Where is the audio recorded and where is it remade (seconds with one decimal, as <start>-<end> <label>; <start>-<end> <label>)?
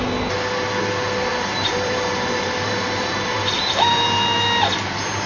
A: 0.0-1.3 recorded; 1.3-3.9 remade; 3.9-5.3 recorded